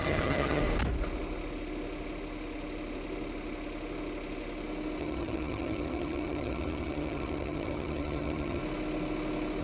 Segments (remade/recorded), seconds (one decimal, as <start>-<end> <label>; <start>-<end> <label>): 0.0-0.6 remade; 0.6-5.0 recorded; 5.0-8.6 remade; 8.6-9.6 recorded